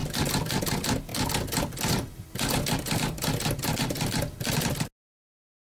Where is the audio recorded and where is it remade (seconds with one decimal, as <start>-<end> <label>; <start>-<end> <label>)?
0.0-5.7 recorded